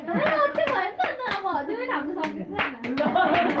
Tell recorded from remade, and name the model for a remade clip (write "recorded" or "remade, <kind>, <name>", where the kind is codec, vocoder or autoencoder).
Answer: recorded